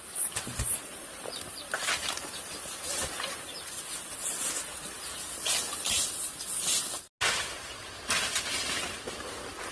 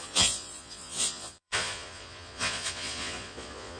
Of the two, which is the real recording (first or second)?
first